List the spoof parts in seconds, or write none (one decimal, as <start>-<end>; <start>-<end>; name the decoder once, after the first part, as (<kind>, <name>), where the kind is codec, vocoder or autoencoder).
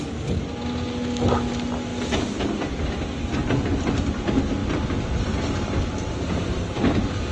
none